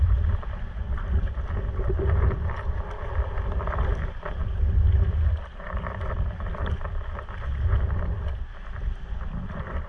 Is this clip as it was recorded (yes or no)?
yes